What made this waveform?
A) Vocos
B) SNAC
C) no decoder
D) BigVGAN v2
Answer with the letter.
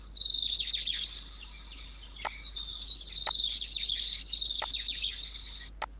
C